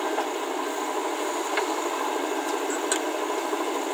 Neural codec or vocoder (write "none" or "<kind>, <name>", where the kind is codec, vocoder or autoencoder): none